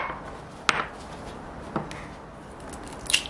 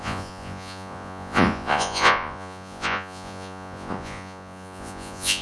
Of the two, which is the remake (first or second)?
second